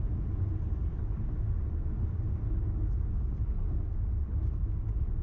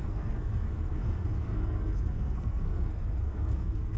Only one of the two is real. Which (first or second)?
first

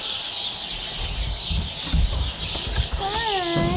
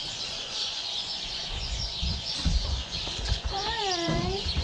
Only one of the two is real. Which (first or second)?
first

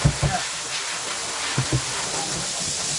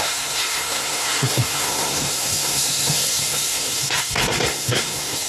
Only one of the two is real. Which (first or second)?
first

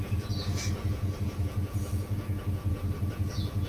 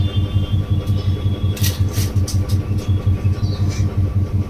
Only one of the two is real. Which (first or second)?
second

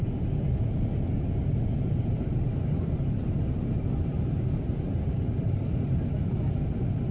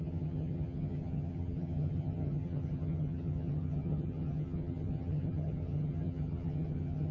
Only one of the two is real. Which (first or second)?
first